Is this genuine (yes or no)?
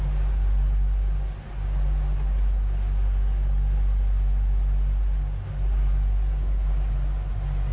yes